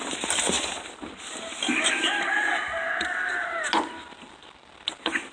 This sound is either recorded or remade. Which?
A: recorded